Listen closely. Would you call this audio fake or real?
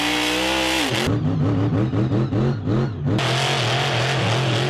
real